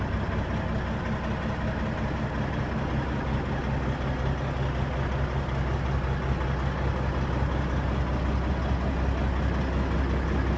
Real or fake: real